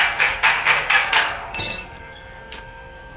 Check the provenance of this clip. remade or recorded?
remade